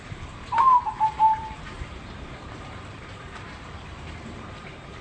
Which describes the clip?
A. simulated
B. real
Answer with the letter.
A